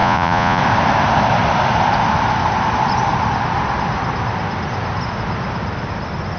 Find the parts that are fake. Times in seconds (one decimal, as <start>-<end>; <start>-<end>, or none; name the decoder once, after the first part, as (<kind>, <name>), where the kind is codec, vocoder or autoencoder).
0.0-0.6 (vocoder, Vocos)